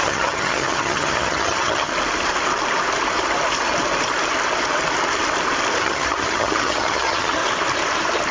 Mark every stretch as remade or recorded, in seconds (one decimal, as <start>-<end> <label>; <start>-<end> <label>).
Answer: 0.0-1.9 remade; 1.9-5.8 recorded; 5.8-7.4 remade; 7.4-8.3 recorded